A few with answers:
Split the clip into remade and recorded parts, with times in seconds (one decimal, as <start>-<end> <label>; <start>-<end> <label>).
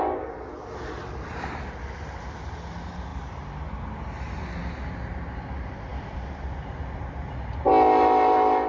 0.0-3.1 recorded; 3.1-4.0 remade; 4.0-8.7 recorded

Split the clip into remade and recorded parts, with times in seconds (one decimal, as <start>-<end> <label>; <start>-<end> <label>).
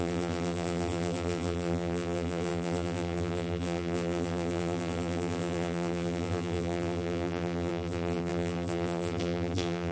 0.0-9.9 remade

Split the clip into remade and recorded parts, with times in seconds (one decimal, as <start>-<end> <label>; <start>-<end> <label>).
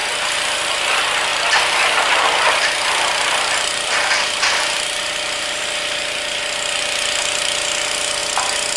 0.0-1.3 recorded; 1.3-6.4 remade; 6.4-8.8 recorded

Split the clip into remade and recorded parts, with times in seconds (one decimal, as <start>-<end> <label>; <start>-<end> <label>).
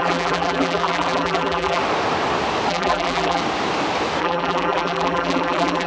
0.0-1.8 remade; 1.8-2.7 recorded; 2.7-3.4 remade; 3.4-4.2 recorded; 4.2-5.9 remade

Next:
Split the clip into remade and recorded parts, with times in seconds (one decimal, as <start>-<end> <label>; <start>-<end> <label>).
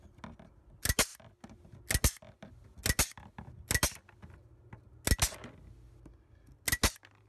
0.0-7.3 recorded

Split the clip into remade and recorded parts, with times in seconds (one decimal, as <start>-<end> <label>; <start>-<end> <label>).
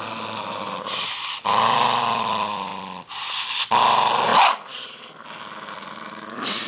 0.0-2.7 remade; 2.7-3.3 recorded; 3.3-4.3 remade; 4.3-5.7 recorded; 5.7-6.7 remade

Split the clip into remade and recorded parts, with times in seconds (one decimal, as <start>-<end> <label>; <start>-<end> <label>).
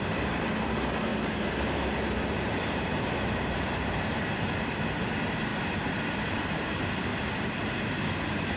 0.0-5.5 remade; 5.5-6.0 recorded; 6.0-7.1 remade; 7.1-7.8 recorded; 7.8-8.6 remade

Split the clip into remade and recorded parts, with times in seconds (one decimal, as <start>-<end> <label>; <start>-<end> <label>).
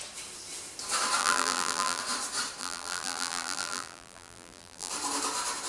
0.0-1.2 recorded; 1.2-2.0 remade; 2.0-2.6 recorded; 2.6-4.9 remade; 4.9-5.7 recorded